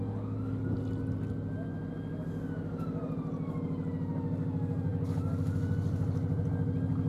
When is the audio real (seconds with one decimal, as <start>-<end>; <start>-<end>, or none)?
0.0-7.1

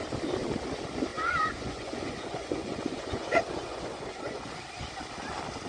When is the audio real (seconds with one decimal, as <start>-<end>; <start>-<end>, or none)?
0.0-1.1; 4.5-5.7

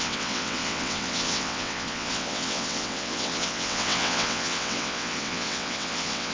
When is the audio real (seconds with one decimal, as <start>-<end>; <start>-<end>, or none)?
none